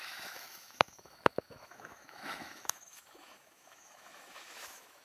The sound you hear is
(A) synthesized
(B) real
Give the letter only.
A